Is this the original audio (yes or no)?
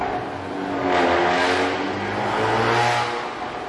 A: yes